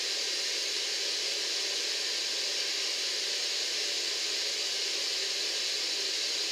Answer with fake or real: real